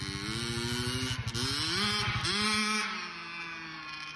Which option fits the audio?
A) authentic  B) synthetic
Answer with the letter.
A